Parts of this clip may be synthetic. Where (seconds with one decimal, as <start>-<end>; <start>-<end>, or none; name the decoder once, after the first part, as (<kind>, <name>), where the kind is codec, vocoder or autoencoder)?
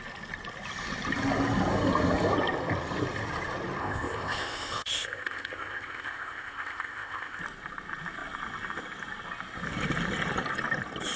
3.8-7.4 (codec, ZipCodec)